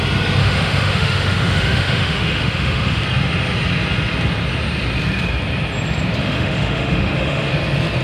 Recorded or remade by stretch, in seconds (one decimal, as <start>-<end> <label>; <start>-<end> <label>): 0.0-0.4 recorded; 0.4-3.0 remade; 3.0-6.2 recorded; 6.2-7.5 remade; 7.5-8.0 recorded